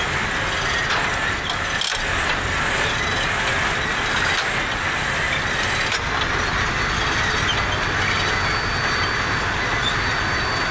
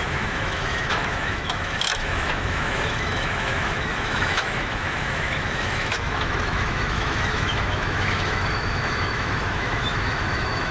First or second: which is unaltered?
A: first